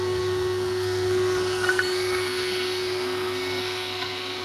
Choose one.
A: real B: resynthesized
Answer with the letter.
B